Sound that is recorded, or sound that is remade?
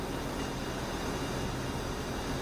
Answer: recorded